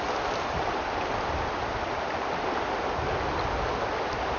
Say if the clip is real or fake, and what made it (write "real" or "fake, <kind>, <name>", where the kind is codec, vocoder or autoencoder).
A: real